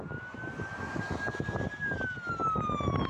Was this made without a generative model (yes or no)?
yes